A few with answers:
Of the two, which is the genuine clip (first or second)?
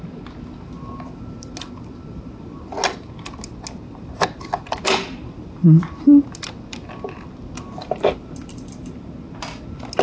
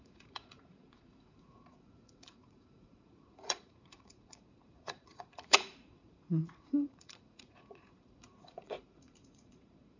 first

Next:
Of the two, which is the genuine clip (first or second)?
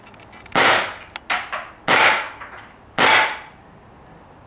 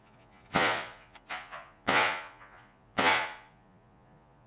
first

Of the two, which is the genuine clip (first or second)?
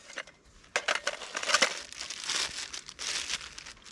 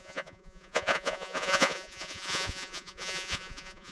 first